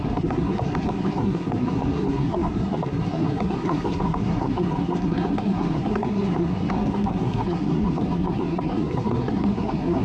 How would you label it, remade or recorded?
remade